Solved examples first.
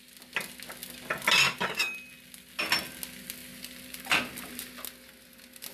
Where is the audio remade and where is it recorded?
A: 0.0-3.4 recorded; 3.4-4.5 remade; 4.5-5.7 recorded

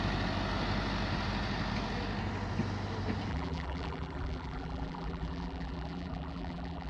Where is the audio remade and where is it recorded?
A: 0.0-3.3 recorded; 3.3-6.9 remade

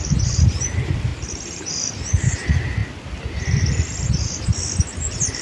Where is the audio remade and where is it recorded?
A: 0.0-5.4 recorded

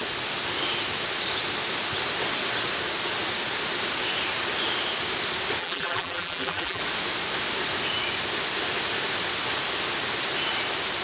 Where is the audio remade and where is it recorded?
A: 0.0-5.6 recorded; 5.6-6.8 remade; 6.8-11.0 recorded

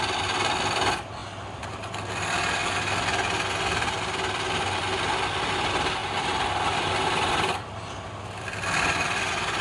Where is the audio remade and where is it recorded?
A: 0.0-2.6 remade; 2.6-5.1 recorded; 5.1-9.6 remade

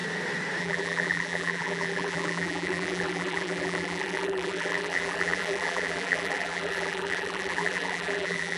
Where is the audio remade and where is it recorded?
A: 0.0-0.6 recorded; 0.6-8.6 remade

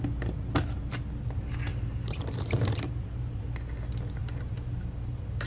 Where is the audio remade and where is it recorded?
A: 0.0-1.7 recorded; 1.7-2.9 remade; 2.9-4.2 recorded; 4.2-5.5 remade

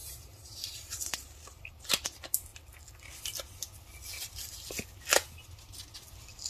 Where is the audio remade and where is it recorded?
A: 0.0-1.8 remade; 1.8-6.5 recorded